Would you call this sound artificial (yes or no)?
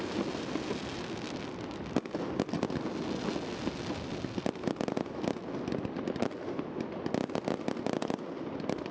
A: no